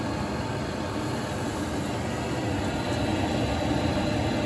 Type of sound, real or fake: real